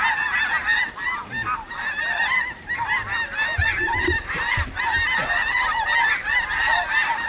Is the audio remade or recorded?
recorded